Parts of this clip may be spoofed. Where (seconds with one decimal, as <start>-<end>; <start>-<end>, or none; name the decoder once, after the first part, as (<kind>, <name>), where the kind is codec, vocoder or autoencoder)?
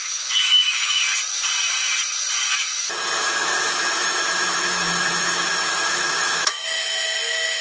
0.0-1.0 (autoencoder, DAC-VAE); 3.2-7.6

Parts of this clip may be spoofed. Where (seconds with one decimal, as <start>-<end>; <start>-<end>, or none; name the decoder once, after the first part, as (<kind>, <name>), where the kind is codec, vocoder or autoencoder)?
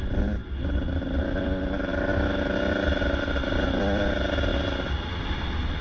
none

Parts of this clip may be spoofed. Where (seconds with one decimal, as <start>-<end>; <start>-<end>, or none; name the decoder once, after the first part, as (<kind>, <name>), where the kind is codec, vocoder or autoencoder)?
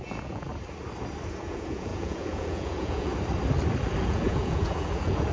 0.0-0.5 (vocoder, Vocos); 1.3-3.1; 4.0-5.3